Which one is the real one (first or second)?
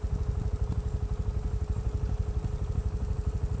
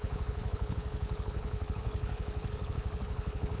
first